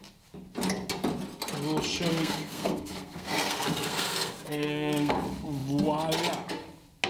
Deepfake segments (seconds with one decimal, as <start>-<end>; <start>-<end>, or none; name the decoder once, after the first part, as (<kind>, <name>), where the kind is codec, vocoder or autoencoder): 2.1-5.1 (codec, SNAC)